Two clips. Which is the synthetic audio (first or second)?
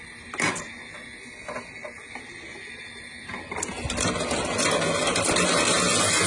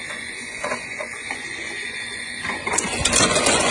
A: second